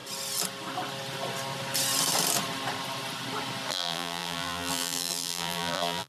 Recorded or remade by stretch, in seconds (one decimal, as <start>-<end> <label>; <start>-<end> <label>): 0.0-3.7 recorded; 3.7-6.1 remade